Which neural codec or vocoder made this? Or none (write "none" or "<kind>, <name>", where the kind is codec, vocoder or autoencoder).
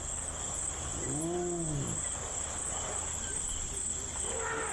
none